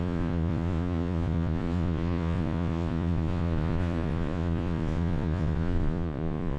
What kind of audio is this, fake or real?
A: fake